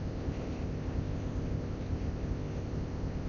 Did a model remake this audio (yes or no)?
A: yes